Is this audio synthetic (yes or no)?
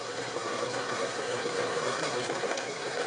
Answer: yes